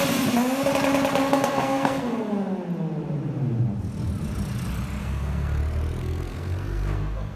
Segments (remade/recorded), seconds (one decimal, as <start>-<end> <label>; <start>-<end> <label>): 0.0-1.3 recorded; 1.3-2.3 remade; 2.3-5.0 recorded; 5.0-5.6 remade; 5.6-6.0 recorded; 6.0-7.4 remade